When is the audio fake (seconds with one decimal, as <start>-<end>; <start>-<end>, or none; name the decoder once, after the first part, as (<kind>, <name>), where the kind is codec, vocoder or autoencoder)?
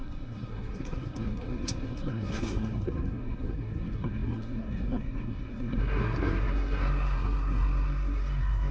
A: 0.0-8.7 (codec, SNAC)